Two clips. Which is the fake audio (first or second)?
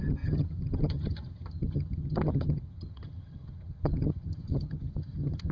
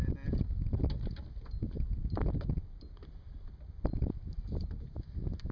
first